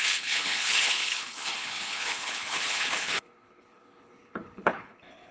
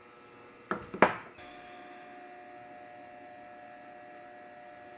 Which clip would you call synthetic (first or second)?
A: first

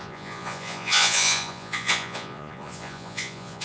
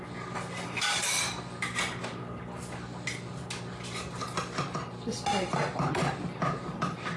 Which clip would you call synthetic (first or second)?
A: first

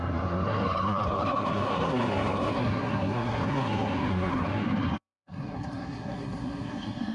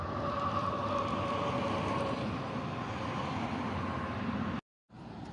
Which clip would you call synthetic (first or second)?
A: first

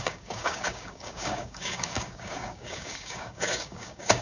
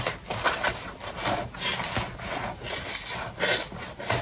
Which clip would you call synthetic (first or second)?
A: first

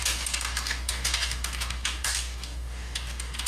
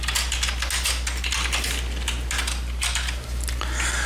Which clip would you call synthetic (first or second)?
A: first